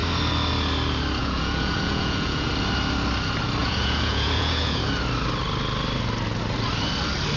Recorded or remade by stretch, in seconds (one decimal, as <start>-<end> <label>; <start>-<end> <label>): 0.0-1.2 recorded; 1.2-2.5 remade; 2.5-3.6 recorded; 3.6-4.8 remade; 4.8-7.4 recorded

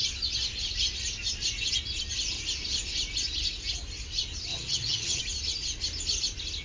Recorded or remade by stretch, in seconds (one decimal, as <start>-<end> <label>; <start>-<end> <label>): 0.0-4.5 recorded; 4.5-5.2 remade; 5.2-6.6 recorded

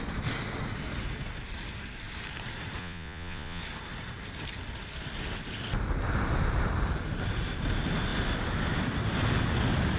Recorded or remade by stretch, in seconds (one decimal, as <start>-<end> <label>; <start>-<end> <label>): 0.0-2.8 recorded; 2.8-3.6 remade; 3.6-10.0 recorded

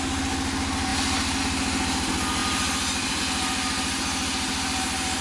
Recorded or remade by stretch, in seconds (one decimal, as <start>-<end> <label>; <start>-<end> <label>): 0.0-2.4 recorded; 2.4-3.2 remade; 3.2-5.2 recorded

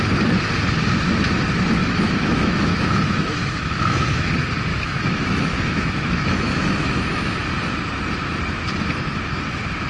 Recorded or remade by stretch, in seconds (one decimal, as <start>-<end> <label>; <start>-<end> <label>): 0.0-1.8 recorded; 1.8-4.3 remade; 4.3-4.7 recorded; 4.7-7.4 remade; 7.4-9.9 recorded

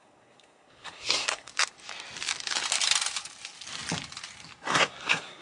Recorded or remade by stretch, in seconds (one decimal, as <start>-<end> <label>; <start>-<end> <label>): 0.0-1.5 remade; 1.5-4.7 recorded; 4.7-5.4 remade

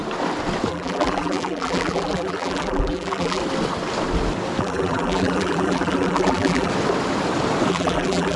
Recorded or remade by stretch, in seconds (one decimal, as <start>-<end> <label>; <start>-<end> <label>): 0.0-0.7 recorded; 0.7-3.4 remade; 3.4-4.6 recorded; 4.6-6.7 remade; 6.7-7.7 recorded; 7.7-8.4 remade